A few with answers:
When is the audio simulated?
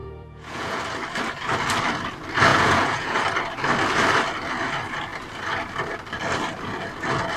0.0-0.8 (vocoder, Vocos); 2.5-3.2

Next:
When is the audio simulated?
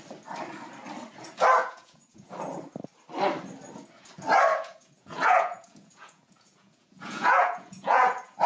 1.6-2.3 (vocoder, Vocos); 4.5-8.5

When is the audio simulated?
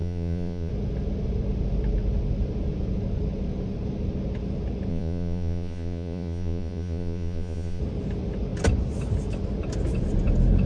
0.0-0.7 (vocoder, Vocos); 4.9-7.8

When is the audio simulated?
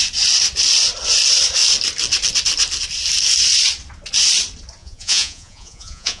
4.8-6.2 (vocoder, Vocos)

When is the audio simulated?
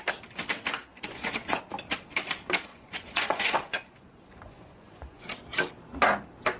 0.9-1.6 (vocoder, Vocos); 2.7-5.2